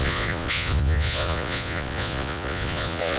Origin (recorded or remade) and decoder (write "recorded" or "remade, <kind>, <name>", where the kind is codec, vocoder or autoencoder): remade, vocoder, Vocos